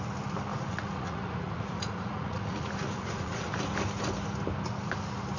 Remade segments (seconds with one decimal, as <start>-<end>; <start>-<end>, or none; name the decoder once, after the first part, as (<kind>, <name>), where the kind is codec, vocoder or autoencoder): 0.5-3.6 (vocoder, Vocos)